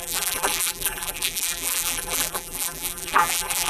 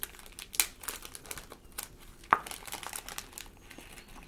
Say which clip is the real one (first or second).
second